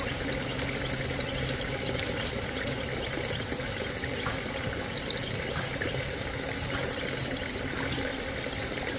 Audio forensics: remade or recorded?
recorded